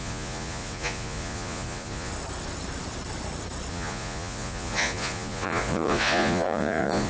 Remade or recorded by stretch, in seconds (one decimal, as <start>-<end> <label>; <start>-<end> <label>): 0.0-2.1 remade; 2.1-3.7 recorded; 3.7-7.1 remade